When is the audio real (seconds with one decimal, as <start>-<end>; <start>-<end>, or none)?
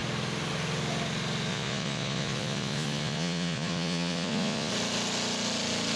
0.0-1.5; 4.7-6.0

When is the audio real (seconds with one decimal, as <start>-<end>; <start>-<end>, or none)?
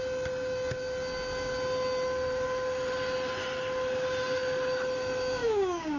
0.0-5.4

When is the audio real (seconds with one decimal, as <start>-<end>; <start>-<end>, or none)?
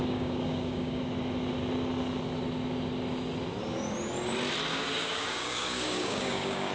1.0-4.7